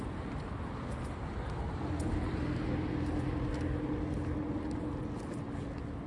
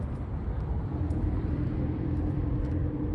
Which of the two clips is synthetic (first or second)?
second